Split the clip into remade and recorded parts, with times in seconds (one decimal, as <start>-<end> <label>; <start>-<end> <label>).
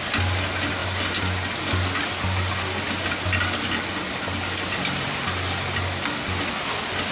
0.0-7.1 recorded